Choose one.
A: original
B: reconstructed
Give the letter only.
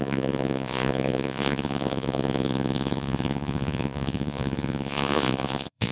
B